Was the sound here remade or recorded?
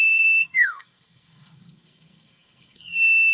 remade